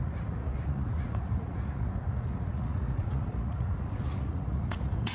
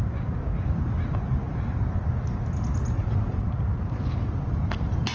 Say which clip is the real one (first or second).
second